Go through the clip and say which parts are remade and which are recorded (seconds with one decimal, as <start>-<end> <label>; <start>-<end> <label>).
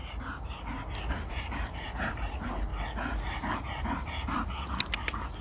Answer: 0.0-1.1 recorded; 1.1-2.7 remade; 2.7-5.4 recorded